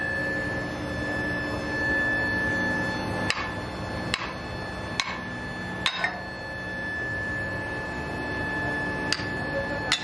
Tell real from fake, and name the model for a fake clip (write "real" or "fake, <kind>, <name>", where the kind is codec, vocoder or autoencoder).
real